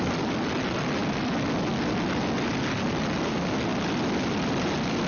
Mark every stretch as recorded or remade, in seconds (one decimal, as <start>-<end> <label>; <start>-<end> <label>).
0.0-5.1 recorded